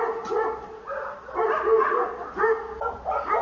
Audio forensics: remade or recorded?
recorded